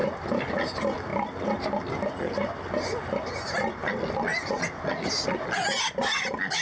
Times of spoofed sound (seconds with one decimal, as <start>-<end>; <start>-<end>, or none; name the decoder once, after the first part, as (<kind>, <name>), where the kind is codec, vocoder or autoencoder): none